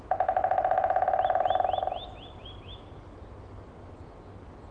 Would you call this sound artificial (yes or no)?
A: no